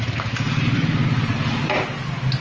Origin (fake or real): real